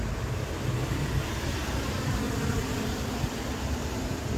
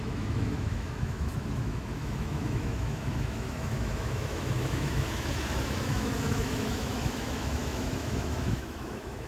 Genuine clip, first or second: first